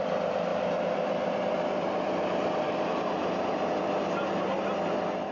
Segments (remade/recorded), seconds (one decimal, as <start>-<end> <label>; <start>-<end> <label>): 0.0-0.5 recorded; 0.5-3.7 remade; 3.7-5.3 recorded